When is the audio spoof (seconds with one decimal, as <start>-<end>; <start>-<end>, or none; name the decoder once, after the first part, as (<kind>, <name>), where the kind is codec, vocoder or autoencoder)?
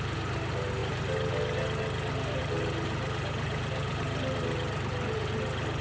none